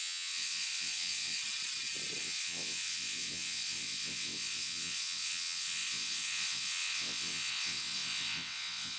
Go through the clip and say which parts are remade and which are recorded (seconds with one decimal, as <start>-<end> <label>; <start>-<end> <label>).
0.0-1.4 remade; 1.4-2.2 recorded; 2.2-9.0 remade